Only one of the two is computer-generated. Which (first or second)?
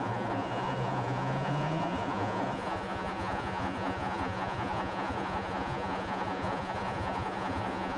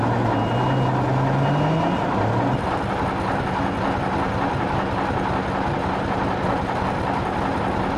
first